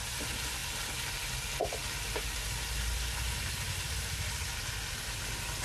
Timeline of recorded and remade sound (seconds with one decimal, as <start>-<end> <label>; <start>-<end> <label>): 0.0-5.6 recorded